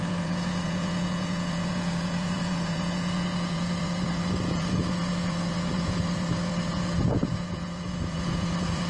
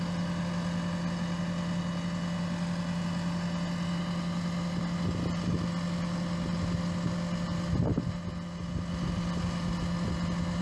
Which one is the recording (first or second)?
second